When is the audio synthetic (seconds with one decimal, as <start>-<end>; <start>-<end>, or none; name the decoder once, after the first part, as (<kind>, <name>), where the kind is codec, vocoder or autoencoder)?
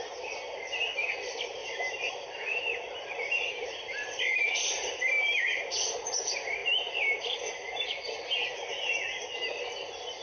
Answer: 1.6-5.7 (vocoder, BigVGAN v2); 6.6-8.5